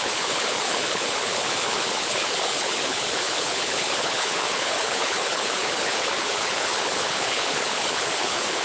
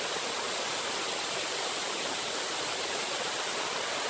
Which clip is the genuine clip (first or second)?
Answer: second